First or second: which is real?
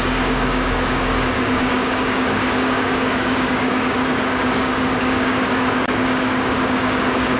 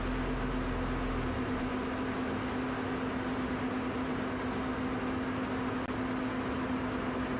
second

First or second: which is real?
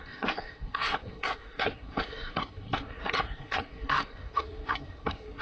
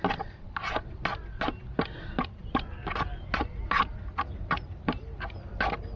second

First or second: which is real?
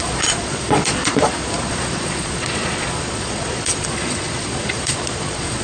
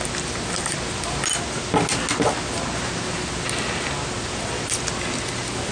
second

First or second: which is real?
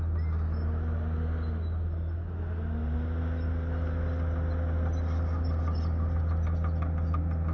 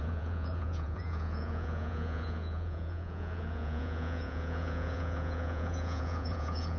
first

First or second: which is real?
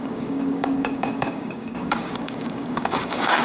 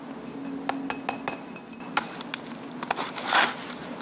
second